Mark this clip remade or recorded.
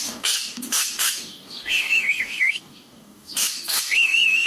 remade